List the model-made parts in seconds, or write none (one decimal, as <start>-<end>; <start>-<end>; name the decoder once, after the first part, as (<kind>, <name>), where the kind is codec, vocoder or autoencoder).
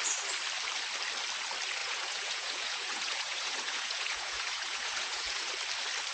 1.8-5.5 (vocoder, Vocos)